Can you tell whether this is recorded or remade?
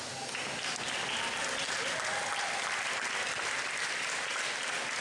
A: recorded